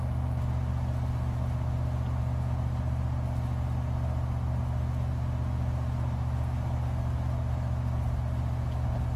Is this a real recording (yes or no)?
yes